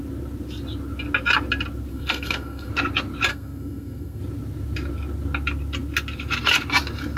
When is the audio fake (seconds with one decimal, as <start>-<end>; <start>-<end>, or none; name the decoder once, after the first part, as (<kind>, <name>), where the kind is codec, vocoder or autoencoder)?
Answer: 1.9-2.7 (codec, SNAC); 3.3-4.2

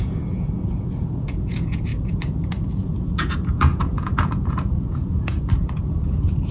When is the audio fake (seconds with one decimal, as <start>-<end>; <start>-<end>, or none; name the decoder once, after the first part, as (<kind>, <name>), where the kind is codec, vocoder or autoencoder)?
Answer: 0.0-6.5 (vocoder, Vocos)